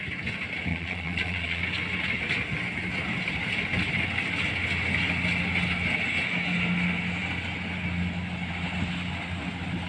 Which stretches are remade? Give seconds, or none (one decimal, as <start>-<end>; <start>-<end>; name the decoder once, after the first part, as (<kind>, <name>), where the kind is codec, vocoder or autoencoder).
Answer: 0.7-1.6 (vocoder, Vocos)